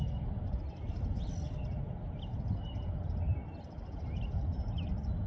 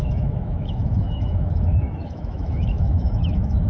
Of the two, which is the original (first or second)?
first